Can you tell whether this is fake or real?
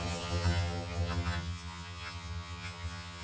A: fake